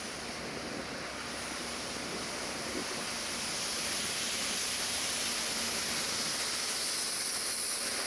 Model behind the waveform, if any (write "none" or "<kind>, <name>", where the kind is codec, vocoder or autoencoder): none